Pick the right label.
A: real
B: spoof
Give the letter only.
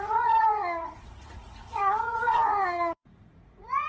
B